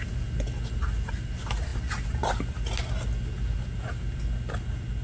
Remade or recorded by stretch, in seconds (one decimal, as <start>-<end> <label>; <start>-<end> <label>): 0.0-5.0 recorded